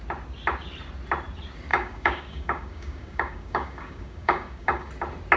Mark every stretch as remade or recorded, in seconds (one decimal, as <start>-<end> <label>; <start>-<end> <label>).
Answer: 0.0-1.7 recorded; 1.7-4.9 remade; 4.9-5.4 recorded